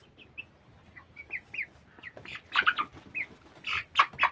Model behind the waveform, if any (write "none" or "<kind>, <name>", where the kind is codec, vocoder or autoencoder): none